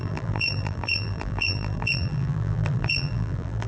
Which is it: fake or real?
fake